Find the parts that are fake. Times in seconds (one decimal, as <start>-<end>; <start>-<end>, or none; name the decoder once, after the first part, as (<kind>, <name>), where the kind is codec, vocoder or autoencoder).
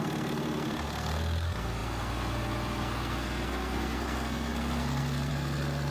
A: 0.0-5.9 (codec, SNAC)